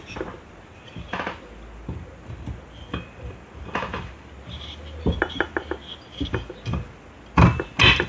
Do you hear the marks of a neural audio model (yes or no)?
no